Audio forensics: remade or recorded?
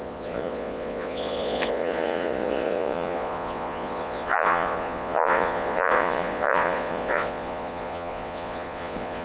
remade